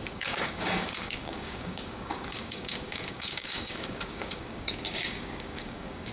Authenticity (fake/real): fake